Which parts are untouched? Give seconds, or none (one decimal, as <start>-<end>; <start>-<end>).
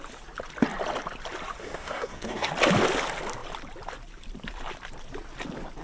0.0-1.6; 2.5-5.8